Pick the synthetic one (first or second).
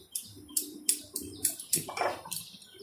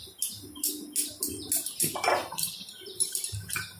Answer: first